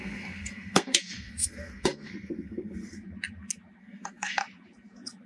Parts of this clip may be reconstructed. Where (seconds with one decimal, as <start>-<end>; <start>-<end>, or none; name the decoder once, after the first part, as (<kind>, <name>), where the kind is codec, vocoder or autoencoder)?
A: 0.0-3.0 (codec, SNAC); 3.8-4.4